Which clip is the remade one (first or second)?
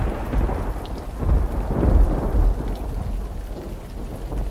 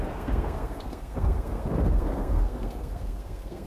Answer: second